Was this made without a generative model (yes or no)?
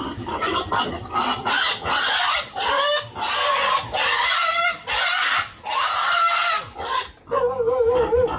yes